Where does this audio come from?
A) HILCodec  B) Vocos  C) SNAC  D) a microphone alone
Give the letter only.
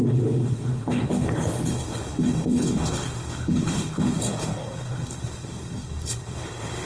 A